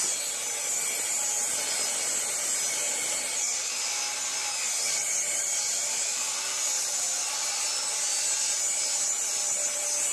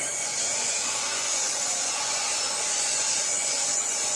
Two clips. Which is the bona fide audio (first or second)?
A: first